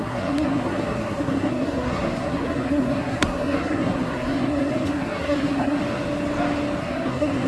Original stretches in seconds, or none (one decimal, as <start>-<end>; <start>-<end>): 5.8-6.8